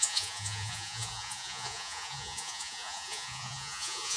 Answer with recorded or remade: remade